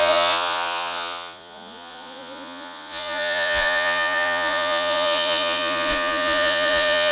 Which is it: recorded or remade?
remade